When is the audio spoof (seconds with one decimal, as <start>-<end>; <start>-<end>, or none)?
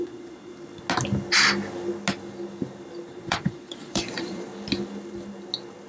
0.0-0.5; 3.1-4.5